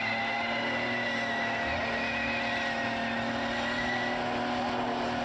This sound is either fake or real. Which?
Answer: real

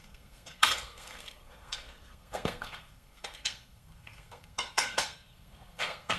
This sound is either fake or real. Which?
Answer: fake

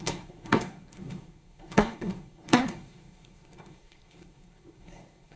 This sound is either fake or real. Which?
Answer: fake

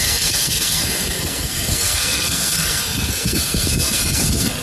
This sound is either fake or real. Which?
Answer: fake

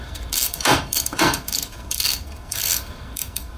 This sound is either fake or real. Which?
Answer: fake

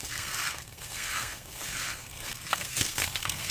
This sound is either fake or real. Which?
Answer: fake